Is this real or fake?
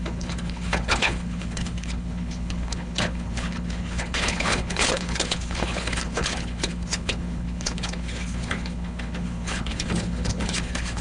fake